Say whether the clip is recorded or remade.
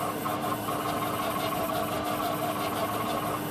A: recorded